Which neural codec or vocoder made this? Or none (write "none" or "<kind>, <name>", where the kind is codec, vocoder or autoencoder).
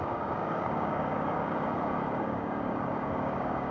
codec, DAC